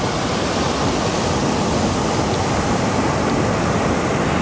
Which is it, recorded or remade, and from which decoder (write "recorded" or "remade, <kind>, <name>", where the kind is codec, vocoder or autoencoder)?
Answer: recorded